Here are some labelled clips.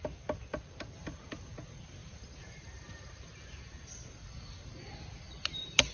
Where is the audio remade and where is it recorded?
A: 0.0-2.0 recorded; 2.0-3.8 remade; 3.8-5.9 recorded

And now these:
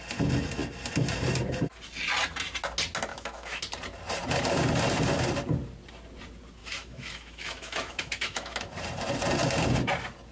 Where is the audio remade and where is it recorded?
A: 0.0-3.1 recorded; 3.1-3.6 remade; 3.6-6.6 recorded; 6.6-8.7 remade; 8.7-10.3 recorded

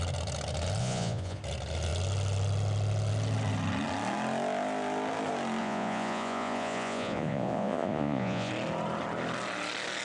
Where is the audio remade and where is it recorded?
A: 0.0-0.8 recorded; 0.8-1.4 remade; 1.4-5.6 recorded; 5.6-8.5 remade; 8.5-10.0 recorded

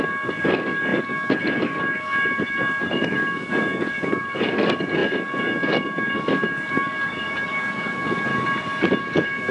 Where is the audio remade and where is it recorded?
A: 0.0-8.3 remade; 8.3-9.0 recorded; 9.0-9.5 remade